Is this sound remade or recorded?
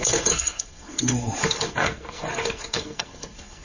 remade